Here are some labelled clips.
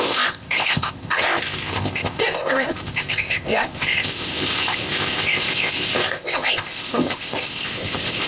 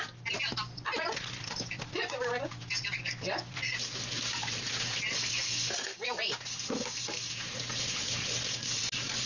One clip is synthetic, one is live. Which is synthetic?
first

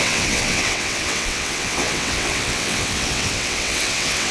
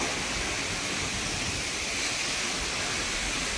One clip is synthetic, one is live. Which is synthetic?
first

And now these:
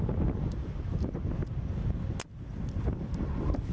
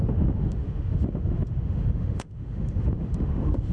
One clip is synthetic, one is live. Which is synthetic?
second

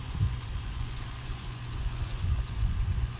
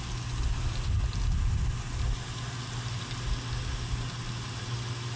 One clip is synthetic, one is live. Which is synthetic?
first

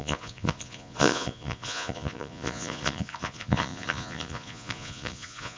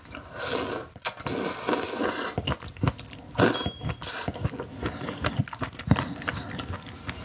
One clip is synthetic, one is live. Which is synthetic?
first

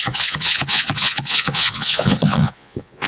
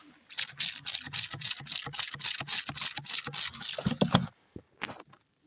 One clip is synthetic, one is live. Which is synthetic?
first